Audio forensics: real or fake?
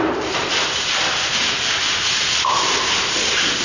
real